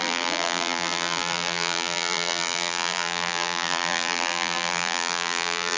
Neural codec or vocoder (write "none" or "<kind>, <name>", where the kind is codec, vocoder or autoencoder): vocoder, BigVGAN v2